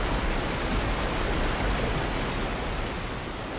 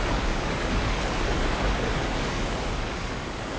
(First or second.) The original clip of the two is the first